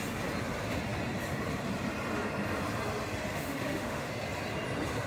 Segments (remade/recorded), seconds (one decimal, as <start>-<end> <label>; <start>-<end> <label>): 0.0-3.3 recorded; 3.3-4.1 remade; 4.1-5.1 recorded